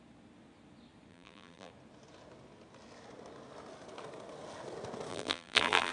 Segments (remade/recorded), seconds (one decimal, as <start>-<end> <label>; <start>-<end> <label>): 0.0-1.1 recorded; 1.1-1.7 remade; 1.7-5.1 recorded; 5.1-5.9 remade